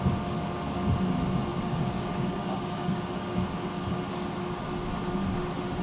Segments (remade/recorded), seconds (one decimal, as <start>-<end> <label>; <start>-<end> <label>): 0.0-1.5 recorded; 1.5-4.0 remade; 4.0-5.8 recorded

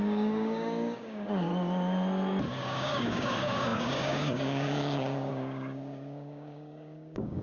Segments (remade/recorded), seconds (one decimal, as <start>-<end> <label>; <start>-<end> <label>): 0.0-1.5 remade; 1.5-2.6 recorded; 2.6-7.4 remade

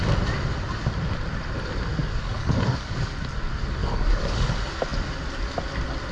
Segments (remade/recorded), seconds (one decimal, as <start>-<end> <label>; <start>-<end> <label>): 0.0-2.0 recorded; 2.0-3.1 remade; 3.1-3.8 recorded; 3.8-4.5 remade; 4.5-6.1 recorded

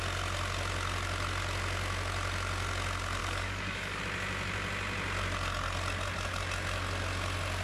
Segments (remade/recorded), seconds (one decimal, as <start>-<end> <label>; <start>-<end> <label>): 0.0-3.2 recorded; 3.2-4.0 remade; 4.0-7.6 recorded

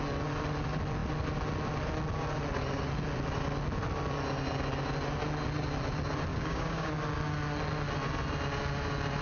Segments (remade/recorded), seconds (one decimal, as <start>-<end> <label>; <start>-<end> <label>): 0.0-6.3 recorded; 6.3-6.9 remade; 6.9-9.2 recorded

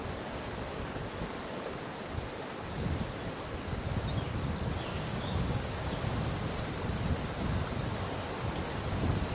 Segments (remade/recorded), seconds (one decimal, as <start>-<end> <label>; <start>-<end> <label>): 0.0-4.9 recorded; 4.9-5.9 remade; 5.9-9.3 recorded

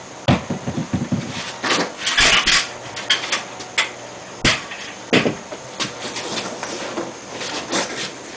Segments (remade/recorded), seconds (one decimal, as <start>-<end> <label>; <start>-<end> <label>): 0.0-8.4 recorded

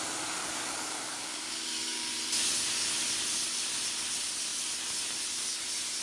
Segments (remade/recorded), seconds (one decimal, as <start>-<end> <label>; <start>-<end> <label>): 0.0-0.4 recorded; 0.4-2.1 remade; 2.1-6.0 recorded